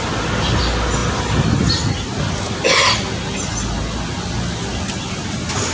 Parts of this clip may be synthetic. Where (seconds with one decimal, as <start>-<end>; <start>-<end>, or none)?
none